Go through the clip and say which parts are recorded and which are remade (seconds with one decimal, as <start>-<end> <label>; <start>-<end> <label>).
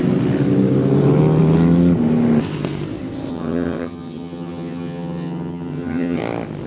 0.0-3.3 recorded; 3.3-6.2 remade; 6.2-6.7 recorded